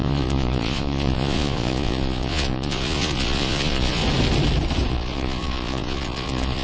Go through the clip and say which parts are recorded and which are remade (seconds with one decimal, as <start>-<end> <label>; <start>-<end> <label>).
0.0-4.0 remade; 4.0-4.9 recorded; 4.9-6.6 remade